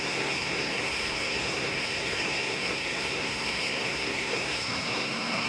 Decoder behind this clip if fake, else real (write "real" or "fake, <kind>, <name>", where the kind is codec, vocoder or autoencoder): fake, codec, SNAC